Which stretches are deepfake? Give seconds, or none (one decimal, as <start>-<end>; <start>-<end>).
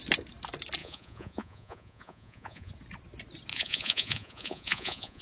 0.8-2.7; 3.5-5.2